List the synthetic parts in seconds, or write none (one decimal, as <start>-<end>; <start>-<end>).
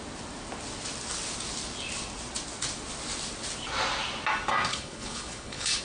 4.7-5.8